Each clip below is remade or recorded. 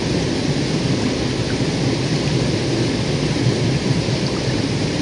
recorded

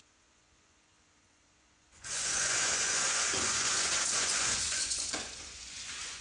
remade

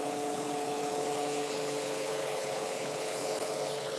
remade